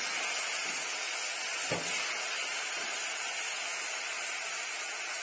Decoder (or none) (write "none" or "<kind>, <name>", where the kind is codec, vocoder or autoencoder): none